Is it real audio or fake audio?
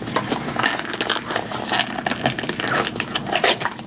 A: real